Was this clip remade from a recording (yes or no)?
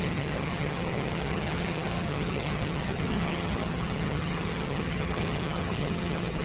yes